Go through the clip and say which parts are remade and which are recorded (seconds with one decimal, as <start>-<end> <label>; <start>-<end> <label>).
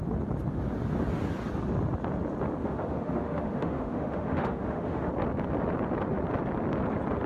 0.0-2.6 recorded; 2.6-5.1 remade; 5.1-7.3 recorded